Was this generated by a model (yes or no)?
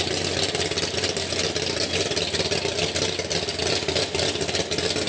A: no